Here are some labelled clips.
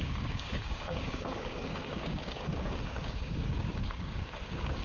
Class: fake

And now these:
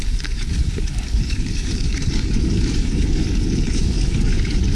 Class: fake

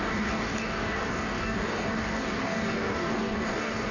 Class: fake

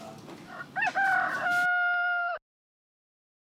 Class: real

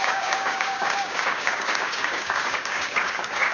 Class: fake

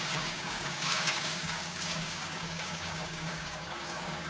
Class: fake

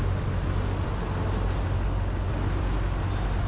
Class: real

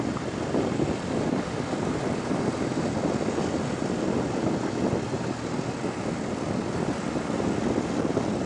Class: real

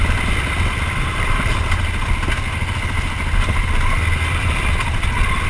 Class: real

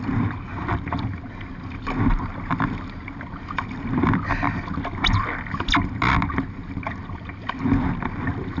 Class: real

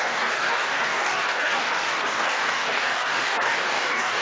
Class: fake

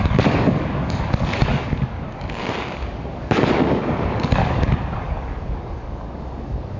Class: fake